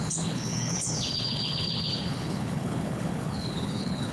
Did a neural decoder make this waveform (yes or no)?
yes